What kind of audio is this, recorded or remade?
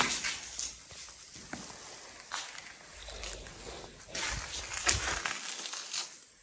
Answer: recorded